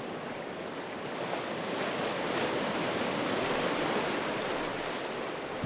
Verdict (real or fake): real